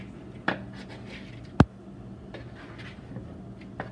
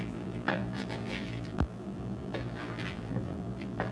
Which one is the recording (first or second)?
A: first